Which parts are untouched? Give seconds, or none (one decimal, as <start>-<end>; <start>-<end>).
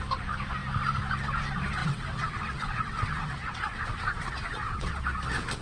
0.0-1.8; 5.0-5.6